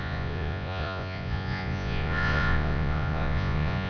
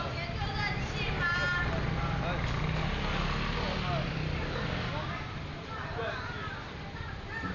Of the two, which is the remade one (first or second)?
first